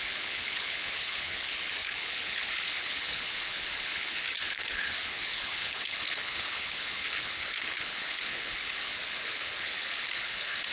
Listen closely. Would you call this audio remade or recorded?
remade